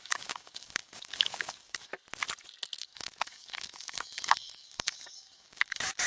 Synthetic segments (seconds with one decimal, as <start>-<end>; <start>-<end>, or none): 0.0-1.9; 2.8-6.1